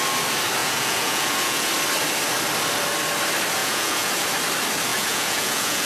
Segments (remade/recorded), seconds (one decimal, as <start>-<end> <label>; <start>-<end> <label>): 0.0-0.6 recorded; 0.6-1.7 remade; 1.7-3.6 recorded; 3.6-4.1 remade; 4.1-4.9 recorded; 4.9-5.9 remade